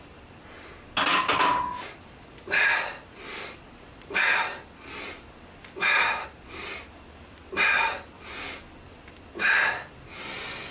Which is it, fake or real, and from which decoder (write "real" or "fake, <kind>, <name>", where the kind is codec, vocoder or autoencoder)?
real